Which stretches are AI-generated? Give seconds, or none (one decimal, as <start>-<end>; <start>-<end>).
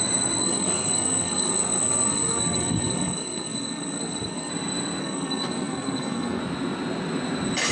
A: 0.4-4.5; 5.0-6.4